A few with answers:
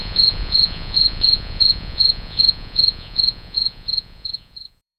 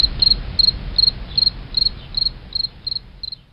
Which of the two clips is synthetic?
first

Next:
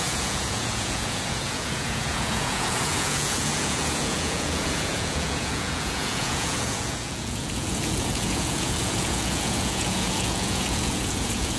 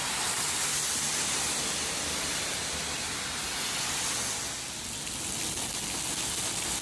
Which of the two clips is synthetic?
first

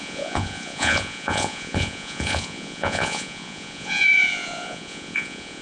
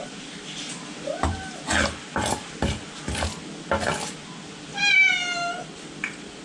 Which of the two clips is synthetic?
first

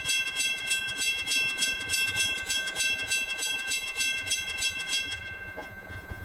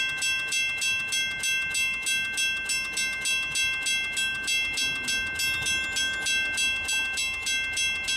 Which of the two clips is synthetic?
first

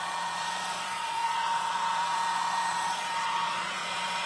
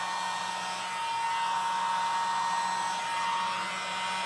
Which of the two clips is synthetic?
first